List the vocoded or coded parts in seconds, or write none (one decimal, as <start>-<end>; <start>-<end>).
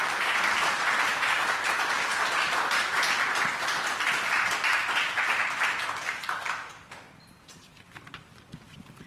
0.0-9.1